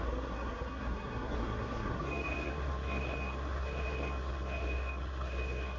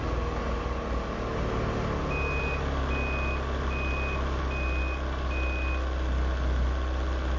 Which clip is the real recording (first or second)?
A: second